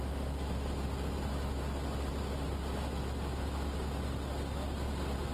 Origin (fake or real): real